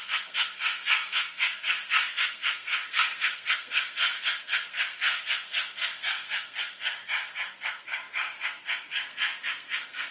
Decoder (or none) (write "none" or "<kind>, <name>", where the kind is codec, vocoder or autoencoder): codec, SNAC